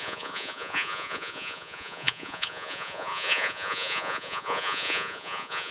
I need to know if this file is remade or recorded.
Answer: remade